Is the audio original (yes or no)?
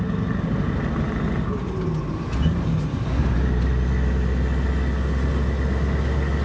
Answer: yes